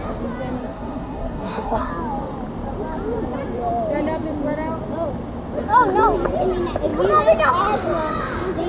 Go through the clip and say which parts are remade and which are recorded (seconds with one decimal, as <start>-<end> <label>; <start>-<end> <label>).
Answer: 0.0-0.6 recorded; 0.6-1.9 remade; 1.9-8.7 recorded